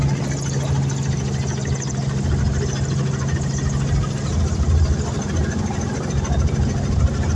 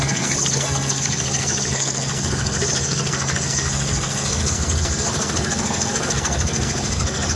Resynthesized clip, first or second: second